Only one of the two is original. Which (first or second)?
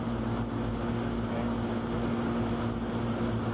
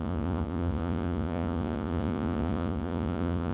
first